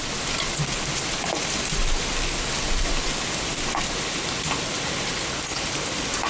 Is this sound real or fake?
real